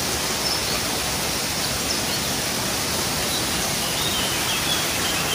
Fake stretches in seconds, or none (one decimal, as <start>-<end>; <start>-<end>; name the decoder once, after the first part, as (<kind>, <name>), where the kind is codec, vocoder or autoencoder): none